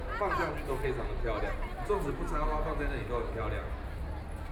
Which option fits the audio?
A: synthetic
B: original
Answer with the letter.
B